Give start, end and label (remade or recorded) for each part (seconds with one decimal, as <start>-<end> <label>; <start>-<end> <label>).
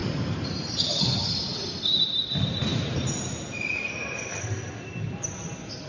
0.0-1.0 remade; 1.0-2.7 recorded; 2.7-3.9 remade; 3.9-5.9 recorded